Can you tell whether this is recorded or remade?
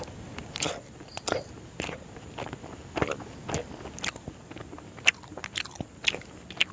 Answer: recorded